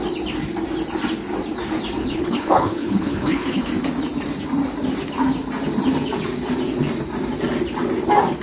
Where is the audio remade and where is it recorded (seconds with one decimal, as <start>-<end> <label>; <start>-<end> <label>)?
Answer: 0.0-2.0 recorded; 2.0-3.7 remade; 3.7-8.4 recorded